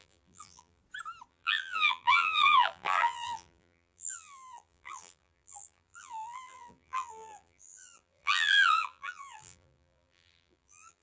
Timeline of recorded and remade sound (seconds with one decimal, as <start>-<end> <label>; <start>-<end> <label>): 0.0-0.8 remade; 0.8-1.3 recorded; 1.3-11.0 remade